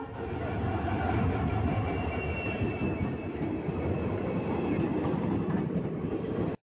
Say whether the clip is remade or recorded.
recorded